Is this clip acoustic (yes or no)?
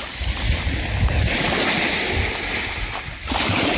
yes